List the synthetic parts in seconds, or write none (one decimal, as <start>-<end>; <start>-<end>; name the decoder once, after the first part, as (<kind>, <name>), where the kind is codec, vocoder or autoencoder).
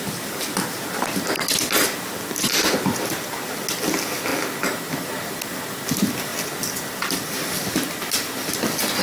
none